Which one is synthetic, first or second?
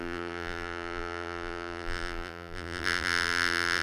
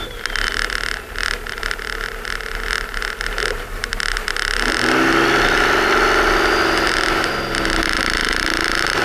first